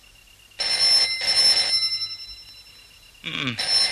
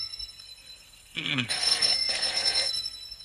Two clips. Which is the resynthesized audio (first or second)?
second